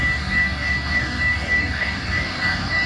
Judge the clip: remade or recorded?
remade